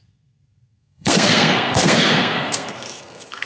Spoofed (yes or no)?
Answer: yes